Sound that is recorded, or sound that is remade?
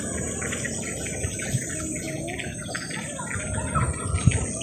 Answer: recorded